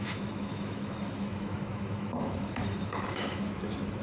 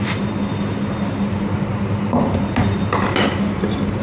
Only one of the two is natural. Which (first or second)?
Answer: second